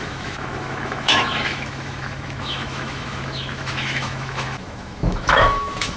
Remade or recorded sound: remade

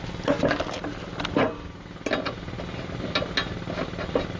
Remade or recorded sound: recorded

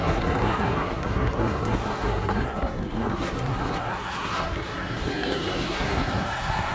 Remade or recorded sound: remade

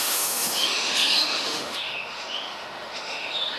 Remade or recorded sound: remade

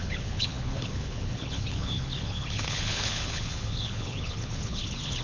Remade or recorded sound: remade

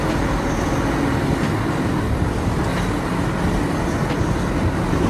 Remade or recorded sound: recorded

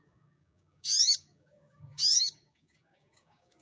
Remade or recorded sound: remade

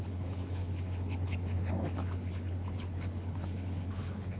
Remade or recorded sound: remade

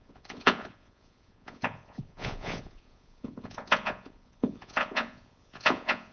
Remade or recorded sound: remade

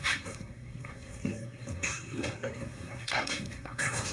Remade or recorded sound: remade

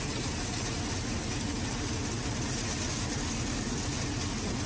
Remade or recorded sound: recorded